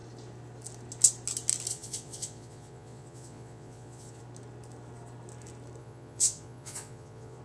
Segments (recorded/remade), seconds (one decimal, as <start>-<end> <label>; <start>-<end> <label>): 0.0-1.7 recorded; 1.7-4.2 remade; 4.2-5.8 recorded; 5.8-7.4 remade